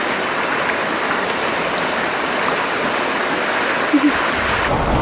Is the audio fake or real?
real